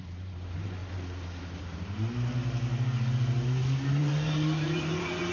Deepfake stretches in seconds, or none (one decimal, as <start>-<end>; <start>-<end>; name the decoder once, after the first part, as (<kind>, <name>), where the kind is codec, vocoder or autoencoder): 0.0-0.8 (vocoder, BigVGAN v2); 4.0-5.3